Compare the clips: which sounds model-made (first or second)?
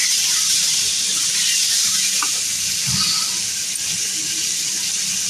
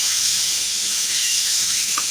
second